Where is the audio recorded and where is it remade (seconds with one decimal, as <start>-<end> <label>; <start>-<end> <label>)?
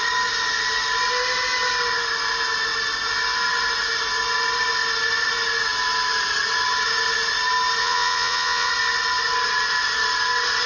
0.0-7.8 recorded; 7.8-8.7 remade; 8.7-10.7 recorded